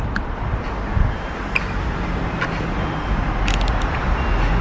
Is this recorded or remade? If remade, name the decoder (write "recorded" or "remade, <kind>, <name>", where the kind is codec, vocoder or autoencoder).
recorded